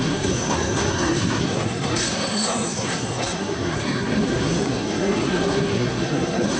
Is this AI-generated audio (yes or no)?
yes